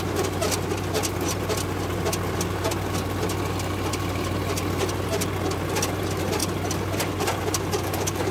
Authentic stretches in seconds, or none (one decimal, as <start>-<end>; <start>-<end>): 0.0-8.3